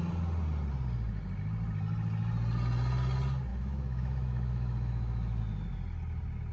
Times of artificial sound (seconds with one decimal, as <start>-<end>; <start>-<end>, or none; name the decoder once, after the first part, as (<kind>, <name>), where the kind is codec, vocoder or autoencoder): 3.5-5.4 (autoencoder, DAC-VAE)